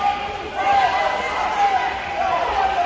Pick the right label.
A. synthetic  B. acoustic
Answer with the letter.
B